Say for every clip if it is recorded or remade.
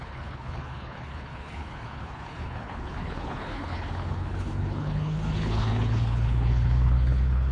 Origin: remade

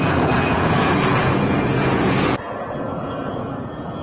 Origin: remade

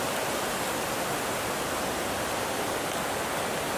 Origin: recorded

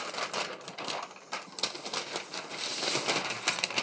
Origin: recorded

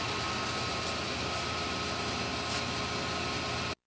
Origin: recorded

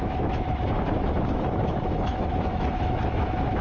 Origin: remade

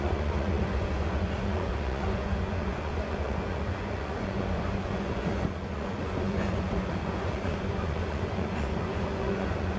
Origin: remade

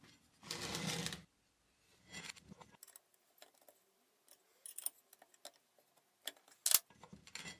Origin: recorded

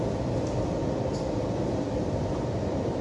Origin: recorded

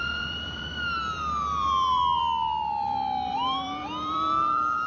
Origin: remade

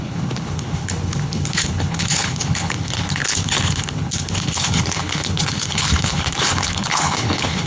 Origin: remade